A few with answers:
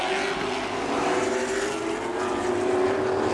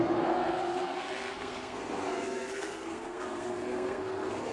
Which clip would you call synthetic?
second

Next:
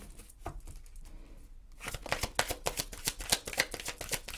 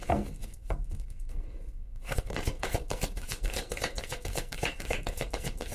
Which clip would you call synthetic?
second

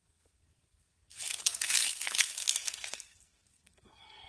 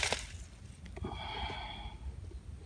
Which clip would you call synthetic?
first